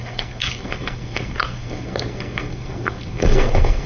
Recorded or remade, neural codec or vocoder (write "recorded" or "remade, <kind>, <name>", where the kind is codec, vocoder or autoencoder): remade, codec, SNAC